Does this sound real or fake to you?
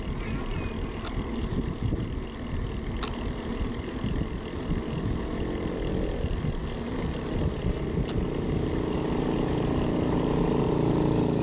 real